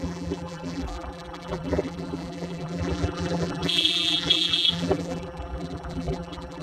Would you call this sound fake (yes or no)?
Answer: yes